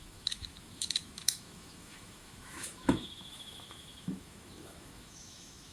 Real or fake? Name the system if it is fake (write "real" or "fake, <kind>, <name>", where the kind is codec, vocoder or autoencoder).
fake, autoencoder, DAC-VAE